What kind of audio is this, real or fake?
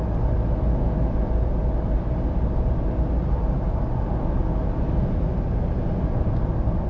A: real